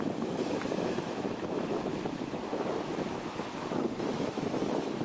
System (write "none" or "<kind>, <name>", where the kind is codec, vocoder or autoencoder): autoencoder, DAC-VAE